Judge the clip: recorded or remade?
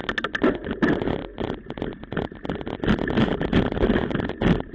recorded